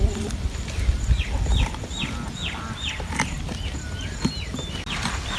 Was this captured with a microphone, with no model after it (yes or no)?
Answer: yes